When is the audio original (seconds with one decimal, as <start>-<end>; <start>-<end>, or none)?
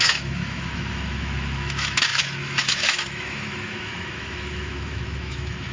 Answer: none